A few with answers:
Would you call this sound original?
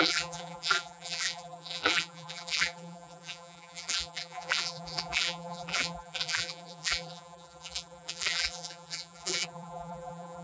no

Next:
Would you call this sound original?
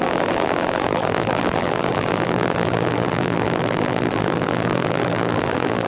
no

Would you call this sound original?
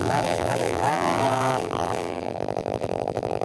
no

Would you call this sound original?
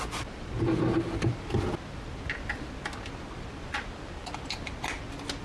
yes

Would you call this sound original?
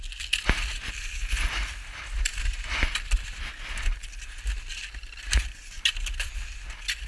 yes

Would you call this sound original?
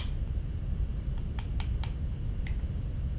yes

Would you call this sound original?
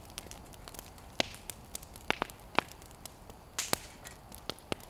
yes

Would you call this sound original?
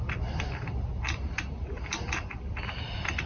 no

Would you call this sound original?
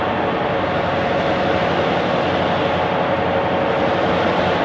yes